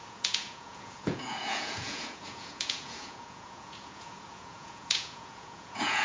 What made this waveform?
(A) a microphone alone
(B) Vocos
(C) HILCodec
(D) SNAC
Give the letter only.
B